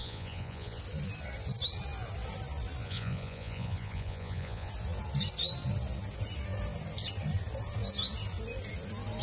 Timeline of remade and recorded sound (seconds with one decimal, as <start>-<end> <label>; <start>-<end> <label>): 0.0-0.8 remade; 0.8-2.8 recorded; 2.8-4.7 remade; 4.7-9.2 recorded